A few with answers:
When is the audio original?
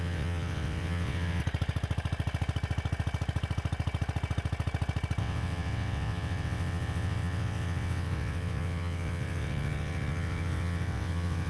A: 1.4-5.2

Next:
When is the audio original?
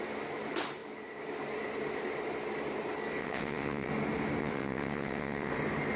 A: 0.0-3.2; 3.9-4.4; 5.5-6.0